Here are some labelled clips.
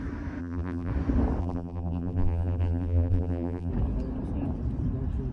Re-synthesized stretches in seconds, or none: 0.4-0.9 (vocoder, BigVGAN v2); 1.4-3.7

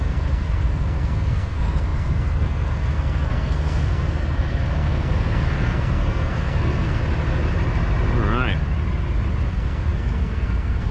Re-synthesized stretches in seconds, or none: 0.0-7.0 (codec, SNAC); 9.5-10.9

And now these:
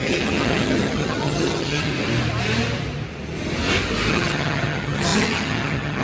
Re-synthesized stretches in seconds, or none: 0.0-1.9 (vocoder, HiFi-GAN); 4.1-6.0